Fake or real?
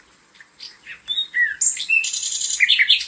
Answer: real